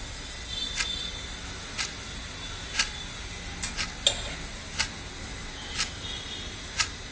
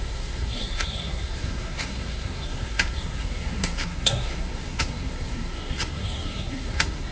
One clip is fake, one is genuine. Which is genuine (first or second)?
first